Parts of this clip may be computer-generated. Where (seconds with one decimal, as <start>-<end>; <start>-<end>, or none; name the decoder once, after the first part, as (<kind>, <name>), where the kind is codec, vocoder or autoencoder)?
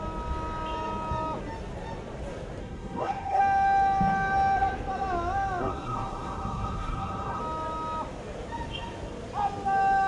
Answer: 2.6-3.4 (codec, SNAC); 5.6-7.4